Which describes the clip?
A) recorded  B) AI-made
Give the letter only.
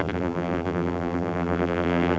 B